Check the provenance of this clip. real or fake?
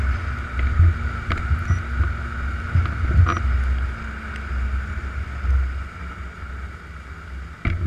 real